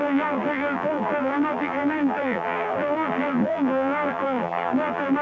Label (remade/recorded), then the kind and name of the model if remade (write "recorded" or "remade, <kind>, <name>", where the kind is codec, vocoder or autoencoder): remade, vocoder, BigVGAN v2